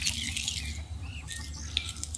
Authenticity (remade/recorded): recorded